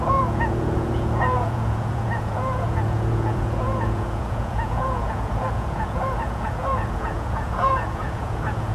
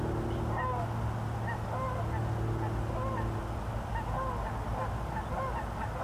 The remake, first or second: first